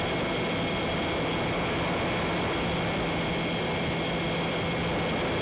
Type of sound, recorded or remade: recorded